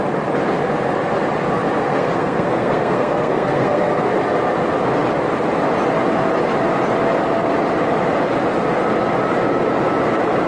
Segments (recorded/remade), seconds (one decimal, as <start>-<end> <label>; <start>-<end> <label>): 0.0-1.8 recorded; 1.8-4.1 remade; 4.1-10.5 recorded